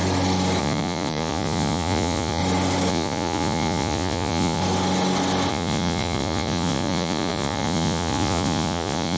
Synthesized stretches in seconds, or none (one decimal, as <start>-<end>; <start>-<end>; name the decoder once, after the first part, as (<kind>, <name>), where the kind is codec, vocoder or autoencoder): 0.6-2.4 (vocoder, Vocos); 2.9-4.6; 5.5-9.2